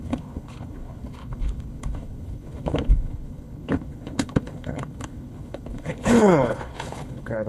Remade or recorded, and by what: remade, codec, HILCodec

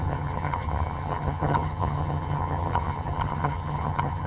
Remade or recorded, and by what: remade, vocoder, HiFi-GAN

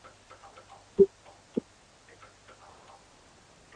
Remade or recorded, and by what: recorded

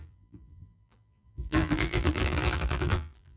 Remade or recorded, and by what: remade, vocoder, BigVGAN v2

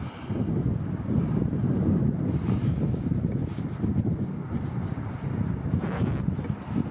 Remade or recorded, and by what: recorded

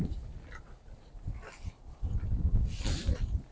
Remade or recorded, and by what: recorded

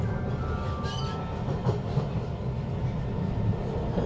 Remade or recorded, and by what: recorded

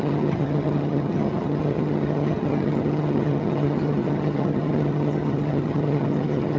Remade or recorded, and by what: remade, vocoder, HiFi-GAN